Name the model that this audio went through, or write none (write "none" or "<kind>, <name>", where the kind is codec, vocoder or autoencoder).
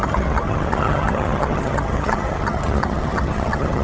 vocoder, HiFi-GAN